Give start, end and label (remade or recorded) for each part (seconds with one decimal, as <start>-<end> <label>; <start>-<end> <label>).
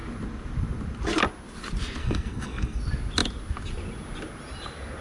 0.0-2.0 recorded; 2.0-2.8 remade; 2.8-5.0 recorded